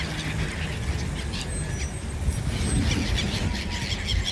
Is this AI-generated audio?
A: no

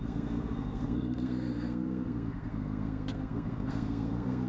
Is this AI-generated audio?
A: yes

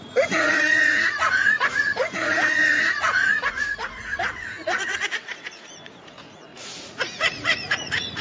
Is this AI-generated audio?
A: yes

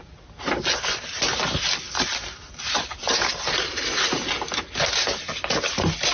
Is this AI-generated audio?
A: no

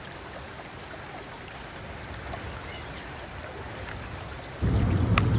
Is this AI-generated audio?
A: no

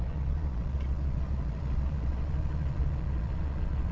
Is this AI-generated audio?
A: yes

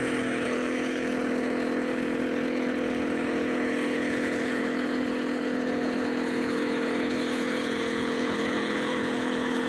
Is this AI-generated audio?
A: yes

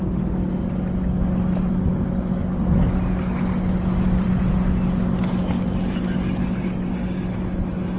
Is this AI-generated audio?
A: no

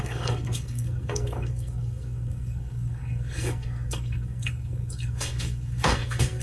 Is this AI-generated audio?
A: yes